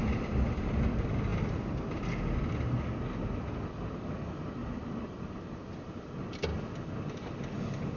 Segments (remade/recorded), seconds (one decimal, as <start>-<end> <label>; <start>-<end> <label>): 0.0-8.0 recorded